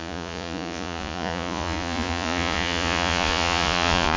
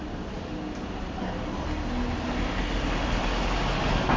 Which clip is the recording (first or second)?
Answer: second